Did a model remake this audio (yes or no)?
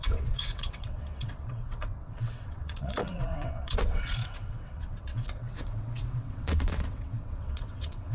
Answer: yes